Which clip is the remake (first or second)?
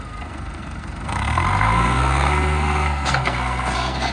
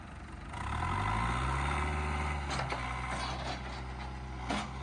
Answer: first